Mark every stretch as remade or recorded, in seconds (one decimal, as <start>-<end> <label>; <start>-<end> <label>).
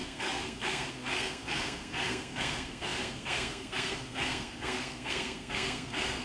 0.0-6.2 remade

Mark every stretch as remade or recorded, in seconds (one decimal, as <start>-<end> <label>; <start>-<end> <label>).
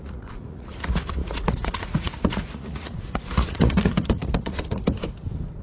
0.0-4.8 remade; 4.8-5.6 recorded